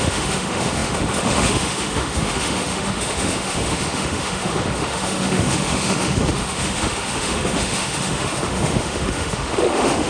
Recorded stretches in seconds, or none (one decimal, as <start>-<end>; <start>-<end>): none